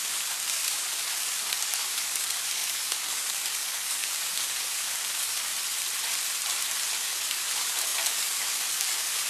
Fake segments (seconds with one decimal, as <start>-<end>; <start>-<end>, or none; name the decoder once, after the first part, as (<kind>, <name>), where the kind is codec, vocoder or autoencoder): 0.0-5.5 (codec, DAC); 6.9-9.3